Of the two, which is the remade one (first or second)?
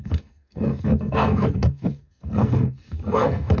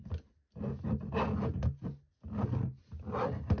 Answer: first